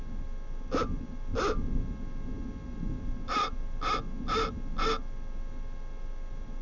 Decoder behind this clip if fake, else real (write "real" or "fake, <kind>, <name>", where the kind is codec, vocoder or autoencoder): real